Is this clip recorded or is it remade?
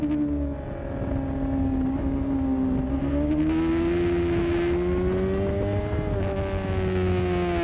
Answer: recorded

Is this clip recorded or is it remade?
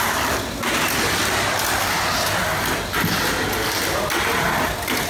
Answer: recorded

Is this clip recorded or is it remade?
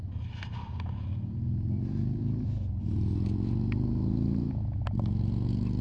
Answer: recorded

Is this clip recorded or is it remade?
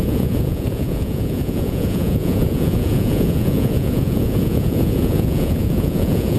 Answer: remade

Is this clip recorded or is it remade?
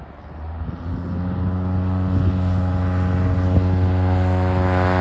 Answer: recorded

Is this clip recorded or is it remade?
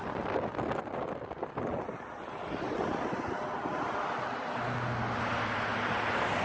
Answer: recorded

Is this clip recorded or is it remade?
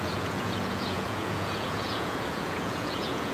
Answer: remade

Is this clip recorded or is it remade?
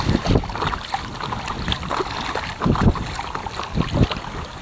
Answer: recorded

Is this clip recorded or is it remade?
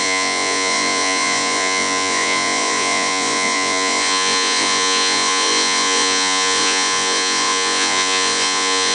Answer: remade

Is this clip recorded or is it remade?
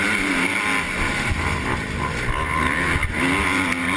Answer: recorded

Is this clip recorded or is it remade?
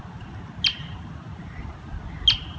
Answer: recorded